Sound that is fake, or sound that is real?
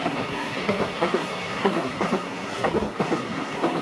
fake